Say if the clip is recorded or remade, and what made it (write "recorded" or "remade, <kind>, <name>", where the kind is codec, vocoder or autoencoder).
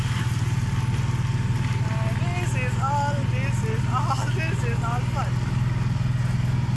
recorded